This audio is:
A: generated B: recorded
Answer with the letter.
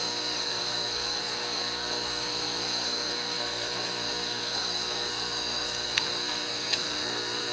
A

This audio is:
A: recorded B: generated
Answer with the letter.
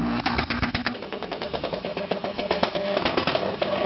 B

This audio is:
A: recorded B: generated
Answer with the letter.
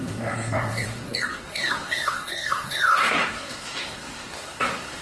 B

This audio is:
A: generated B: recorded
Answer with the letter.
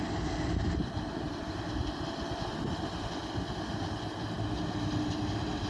B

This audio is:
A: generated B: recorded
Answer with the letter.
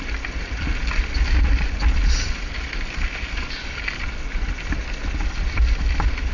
B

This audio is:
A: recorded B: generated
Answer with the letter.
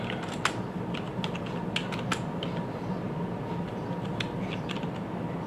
A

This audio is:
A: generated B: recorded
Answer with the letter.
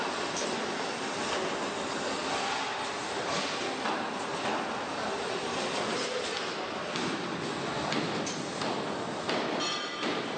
B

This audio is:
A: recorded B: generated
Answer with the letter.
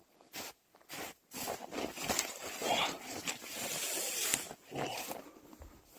A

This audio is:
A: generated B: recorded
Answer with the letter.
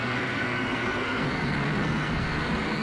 A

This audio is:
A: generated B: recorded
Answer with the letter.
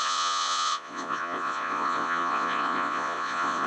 A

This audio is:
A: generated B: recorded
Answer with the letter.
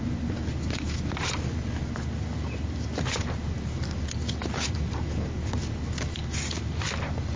B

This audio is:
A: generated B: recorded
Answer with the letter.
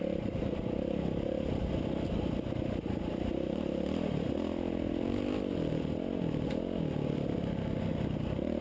B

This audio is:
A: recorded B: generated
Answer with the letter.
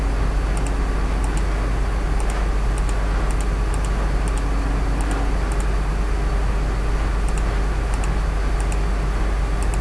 A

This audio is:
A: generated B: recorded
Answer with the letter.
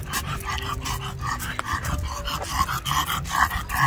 B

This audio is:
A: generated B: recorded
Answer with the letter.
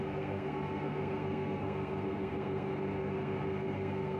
A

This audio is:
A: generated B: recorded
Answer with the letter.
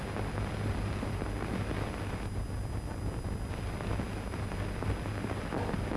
B